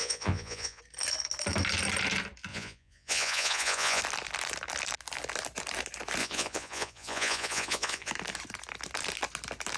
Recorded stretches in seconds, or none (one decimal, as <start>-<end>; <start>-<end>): 0.8-2.5; 4.0-6.2; 8.1-9.8